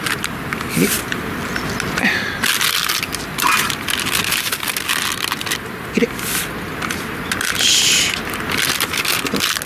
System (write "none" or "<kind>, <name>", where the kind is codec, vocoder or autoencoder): none